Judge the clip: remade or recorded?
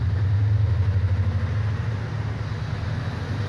recorded